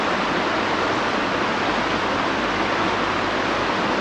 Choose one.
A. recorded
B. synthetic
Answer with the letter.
A